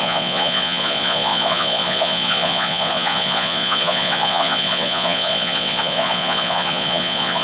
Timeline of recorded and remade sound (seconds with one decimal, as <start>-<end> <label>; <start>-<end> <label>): 0.0-7.4 remade

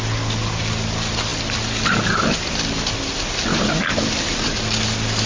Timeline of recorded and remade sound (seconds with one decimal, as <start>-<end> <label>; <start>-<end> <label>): 0.0-5.3 recorded

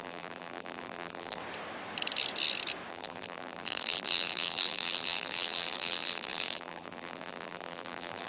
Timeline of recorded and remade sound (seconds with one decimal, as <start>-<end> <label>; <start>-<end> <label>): 0.0-1.4 remade; 1.4-2.9 recorded; 2.9-8.3 remade

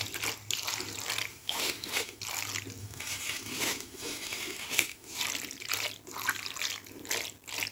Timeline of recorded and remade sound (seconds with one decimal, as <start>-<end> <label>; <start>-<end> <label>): 0.0-1.3 recorded; 1.3-2.2 remade; 2.2-2.8 recorded; 2.8-5.2 remade; 5.2-7.7 recorded

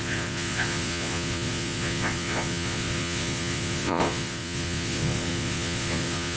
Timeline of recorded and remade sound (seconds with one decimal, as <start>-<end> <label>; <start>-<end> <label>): 0.0-6.4 remade